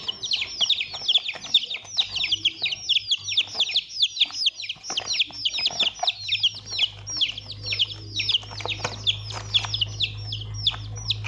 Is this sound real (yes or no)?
yes